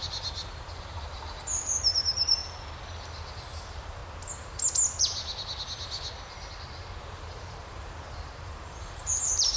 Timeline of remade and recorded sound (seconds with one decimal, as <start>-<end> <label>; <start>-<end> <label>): 0.0-2.4 remade; 2.4-3.3 recorded; 3.3-4.0 remade; 4.0-7.0 recorded; 7.0-9.6 remade